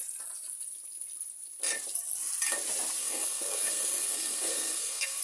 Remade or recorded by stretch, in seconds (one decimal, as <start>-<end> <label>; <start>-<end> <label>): 0.0-3.0 recorded; 3.0-5.2 remade